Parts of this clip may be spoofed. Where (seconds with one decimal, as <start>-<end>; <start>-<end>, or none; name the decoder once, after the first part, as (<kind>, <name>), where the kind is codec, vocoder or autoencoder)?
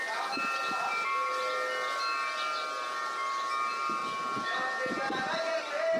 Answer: none